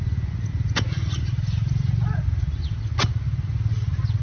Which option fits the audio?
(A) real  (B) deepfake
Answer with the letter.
A